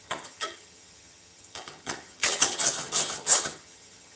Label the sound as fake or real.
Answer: fake